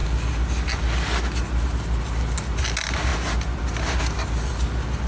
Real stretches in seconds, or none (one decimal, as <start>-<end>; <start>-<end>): 0.0-5.1